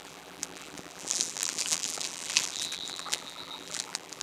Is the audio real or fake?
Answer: fake